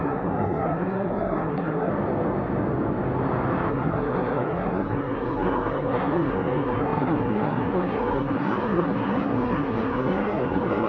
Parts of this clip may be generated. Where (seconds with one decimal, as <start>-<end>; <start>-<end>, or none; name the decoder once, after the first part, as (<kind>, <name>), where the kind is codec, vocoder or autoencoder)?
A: 0.0-1.9 (codec, SNAC); 3.7-10.9